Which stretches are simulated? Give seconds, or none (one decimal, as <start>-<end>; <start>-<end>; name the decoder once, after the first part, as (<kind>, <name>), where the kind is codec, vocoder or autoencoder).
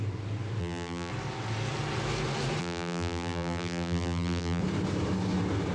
0.6-1.1 (vocoder, BigVGAN v2); 2.6-4.6